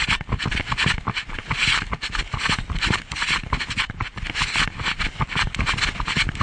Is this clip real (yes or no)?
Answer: yes